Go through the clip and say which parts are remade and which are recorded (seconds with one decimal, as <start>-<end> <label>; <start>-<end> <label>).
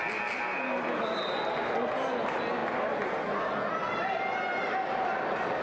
0.0-5.6 recorded